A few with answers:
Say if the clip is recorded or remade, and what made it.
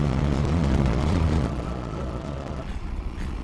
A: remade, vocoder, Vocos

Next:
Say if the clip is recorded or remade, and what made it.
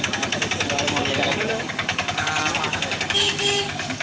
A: remade, codec, DAC